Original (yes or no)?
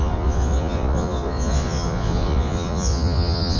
no